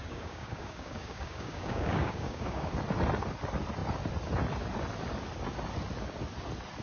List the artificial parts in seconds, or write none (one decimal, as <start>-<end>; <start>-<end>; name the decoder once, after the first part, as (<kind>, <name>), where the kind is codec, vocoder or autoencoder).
0.0-2.7 (codec, DAC)